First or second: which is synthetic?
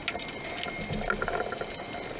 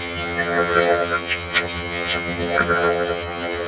second